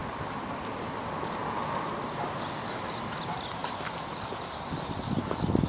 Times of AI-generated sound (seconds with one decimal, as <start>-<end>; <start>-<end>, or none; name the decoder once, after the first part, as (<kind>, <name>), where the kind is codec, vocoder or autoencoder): none